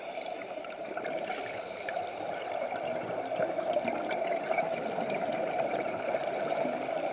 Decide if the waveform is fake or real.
fake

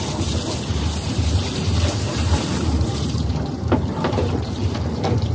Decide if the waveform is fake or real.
fake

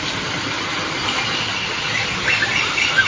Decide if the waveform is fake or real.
fake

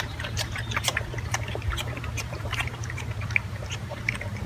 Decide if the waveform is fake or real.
fake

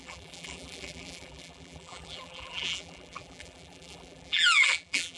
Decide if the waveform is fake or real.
fake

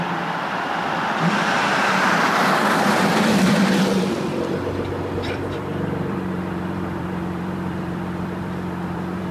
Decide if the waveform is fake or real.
fake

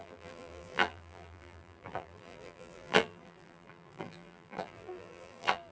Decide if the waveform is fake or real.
fake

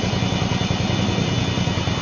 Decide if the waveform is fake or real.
real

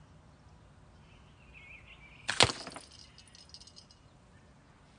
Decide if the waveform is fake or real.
real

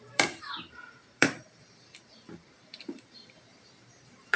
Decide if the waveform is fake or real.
fake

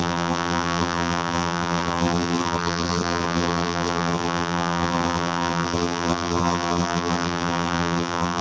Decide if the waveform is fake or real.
fake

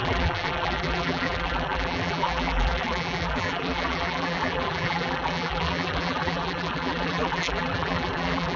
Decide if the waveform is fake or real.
fake